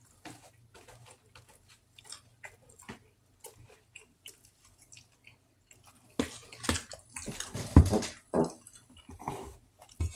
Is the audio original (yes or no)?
yes